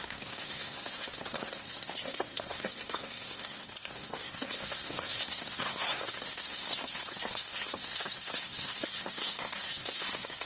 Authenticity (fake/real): fake